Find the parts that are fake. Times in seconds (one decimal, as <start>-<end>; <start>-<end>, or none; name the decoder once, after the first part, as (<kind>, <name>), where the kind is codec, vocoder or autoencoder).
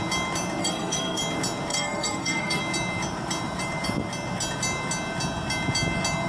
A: 0.6-1.2 (codec, SNAC); 1.7-2.6